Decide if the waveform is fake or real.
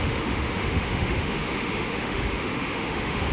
fake